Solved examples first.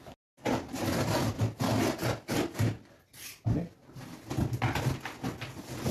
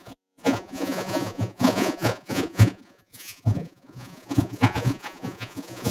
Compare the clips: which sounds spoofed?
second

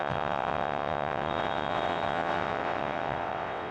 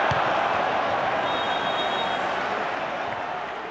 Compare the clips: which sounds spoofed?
first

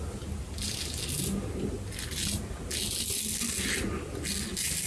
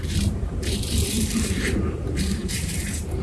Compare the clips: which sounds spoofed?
second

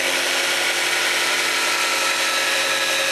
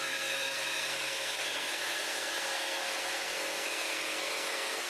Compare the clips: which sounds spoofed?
second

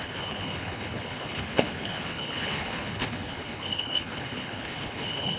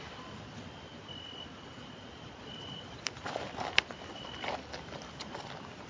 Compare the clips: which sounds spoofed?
first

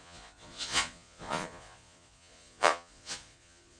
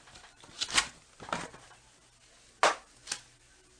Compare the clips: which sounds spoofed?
first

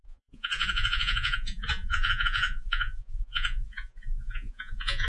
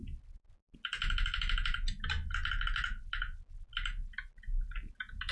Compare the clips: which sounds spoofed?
first